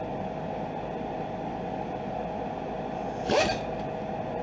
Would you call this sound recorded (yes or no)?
yes